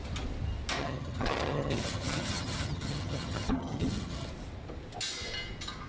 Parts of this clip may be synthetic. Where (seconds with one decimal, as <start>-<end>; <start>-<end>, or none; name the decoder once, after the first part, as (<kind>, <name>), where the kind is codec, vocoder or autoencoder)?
0.8-4.3 (vocoder, HiFi-GAN)